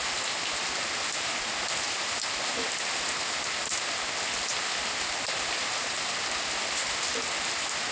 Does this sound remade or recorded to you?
recorded